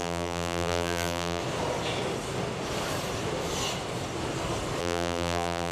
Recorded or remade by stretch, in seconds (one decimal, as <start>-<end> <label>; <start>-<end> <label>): 0.0-1.4 remade; 1.4-4.8 recorded; 4.8-5.7 remade

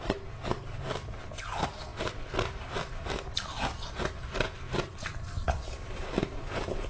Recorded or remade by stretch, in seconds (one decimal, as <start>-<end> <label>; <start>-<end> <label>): 0.0-5.1 recorded; 5.1-6.3 remade; 6.3-6.9 recorded

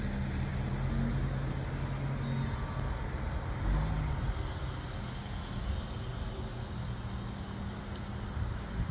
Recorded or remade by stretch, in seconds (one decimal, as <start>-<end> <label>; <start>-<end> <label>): 0.0-8.9 recorded

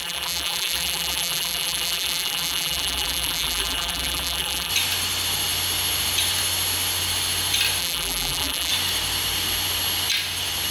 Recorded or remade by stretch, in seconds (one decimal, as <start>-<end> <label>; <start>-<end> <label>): 0.0-4.7 remade; 4.7-7.8 recorded; 7.8-8.7 remade; 8.7-10.7 recorded

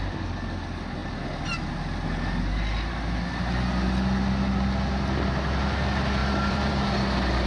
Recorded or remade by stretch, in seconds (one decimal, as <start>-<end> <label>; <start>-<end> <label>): 0.0-6.2 recorded; 6.2-6.7 remade; 6.7-7.5 recorded

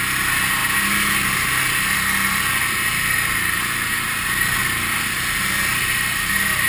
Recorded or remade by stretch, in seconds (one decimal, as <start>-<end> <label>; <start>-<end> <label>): 0.0-6.7 recorded

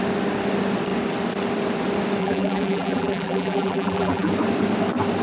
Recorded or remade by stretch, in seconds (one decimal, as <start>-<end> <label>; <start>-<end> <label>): 0.0-2.2 recorded; 2.2-4.3 remade; 4.3-5.2 recorded